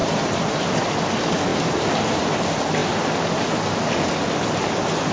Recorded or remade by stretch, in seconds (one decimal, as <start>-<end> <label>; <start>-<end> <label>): 0.0-0.7 remade; 0.7-1.5 recorded; 1.5-2.3 remade; 2.3-2.8 recorded; 2.8-3.3 remade; 3.3-5.1 recorded